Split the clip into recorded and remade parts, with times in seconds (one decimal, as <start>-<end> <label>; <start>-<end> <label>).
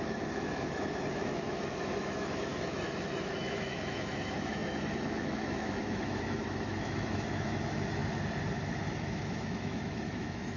0.0-8.0 remade; 8.0-8.7 recorded; 8.7-10.6 remade